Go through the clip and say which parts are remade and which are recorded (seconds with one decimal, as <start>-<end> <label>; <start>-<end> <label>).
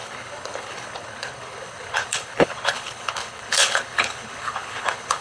0.0-5.2 remade